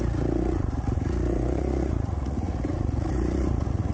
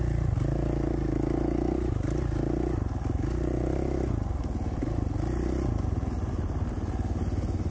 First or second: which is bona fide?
second